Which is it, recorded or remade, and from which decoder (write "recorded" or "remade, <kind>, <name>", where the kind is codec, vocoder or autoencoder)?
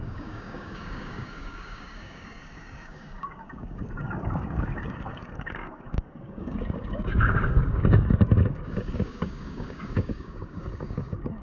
remade, codec, DAC